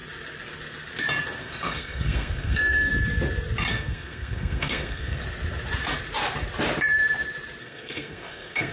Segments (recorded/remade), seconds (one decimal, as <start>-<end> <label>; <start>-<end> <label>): 0.0-1.4 recorded; 1.4-2.9 remade; 2.9-3.7 recorded; 3.7-5.2 remade; 5.2-7.6 recorded; 7.6-8.7 remade